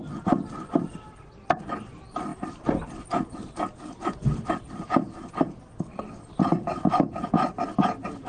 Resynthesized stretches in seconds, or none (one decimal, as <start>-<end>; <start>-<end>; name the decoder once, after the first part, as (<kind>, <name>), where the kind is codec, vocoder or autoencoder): none